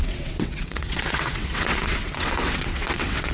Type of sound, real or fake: fake